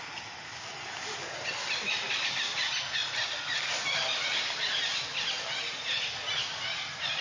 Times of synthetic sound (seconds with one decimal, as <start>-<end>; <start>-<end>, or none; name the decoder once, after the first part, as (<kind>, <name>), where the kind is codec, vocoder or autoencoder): none

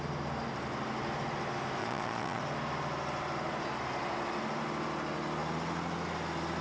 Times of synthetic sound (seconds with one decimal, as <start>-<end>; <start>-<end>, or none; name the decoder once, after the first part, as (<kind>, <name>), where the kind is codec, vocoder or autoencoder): 1.8-2.4 (vocoder, Vocos)

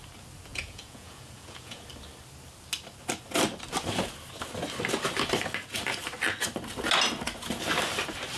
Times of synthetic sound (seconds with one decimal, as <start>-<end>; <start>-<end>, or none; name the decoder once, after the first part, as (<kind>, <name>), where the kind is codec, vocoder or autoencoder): 0.5-1.8 (vocoder, Vocos)